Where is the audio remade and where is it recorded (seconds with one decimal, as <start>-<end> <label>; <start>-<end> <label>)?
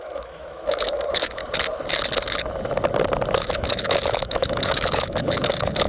0.0-1.4 remade; 1.4-3.4 recorded; 3.4-5.9 remade